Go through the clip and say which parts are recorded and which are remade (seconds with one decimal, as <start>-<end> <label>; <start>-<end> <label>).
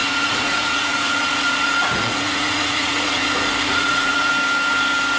0.0-3.1 remade; 3.1-3.7 recorded; 3.7-4.3 remade; 4.3-5.2 recorded